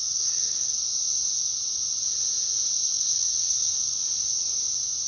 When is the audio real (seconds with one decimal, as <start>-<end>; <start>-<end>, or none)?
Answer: 0.8-2.9; 4.0-5.1